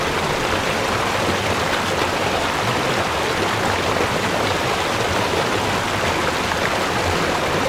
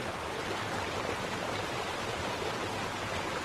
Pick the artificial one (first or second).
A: second